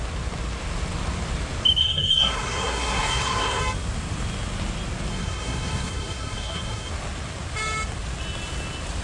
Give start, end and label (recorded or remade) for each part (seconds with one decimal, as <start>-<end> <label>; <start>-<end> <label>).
0.0-1.8 recorded; 1.8-3.6 remade; 3.6-5.1 recorded; 5.1-6.9 remade; 6.9-9.0 recorded